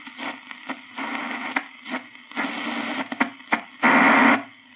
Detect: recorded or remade recorded